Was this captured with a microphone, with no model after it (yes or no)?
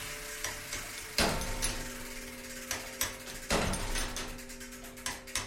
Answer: yes